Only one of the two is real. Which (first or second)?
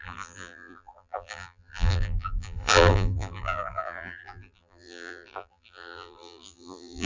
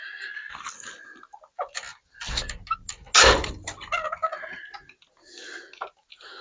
second